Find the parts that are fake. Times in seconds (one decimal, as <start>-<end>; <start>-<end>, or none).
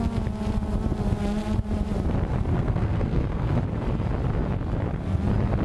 2.5-3.6